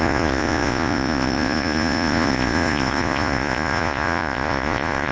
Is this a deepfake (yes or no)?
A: yes